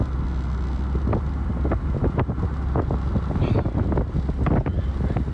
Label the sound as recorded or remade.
recorded